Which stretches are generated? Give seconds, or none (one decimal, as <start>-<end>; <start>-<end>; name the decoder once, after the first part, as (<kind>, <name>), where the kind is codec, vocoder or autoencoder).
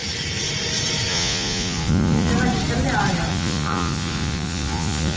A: 1.1-2.3 (vocoder, Vocos); 3.3-5.2